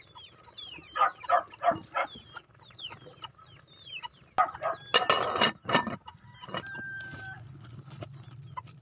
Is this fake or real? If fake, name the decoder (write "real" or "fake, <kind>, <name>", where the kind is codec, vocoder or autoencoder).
real